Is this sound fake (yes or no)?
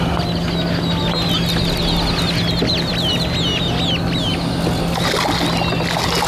no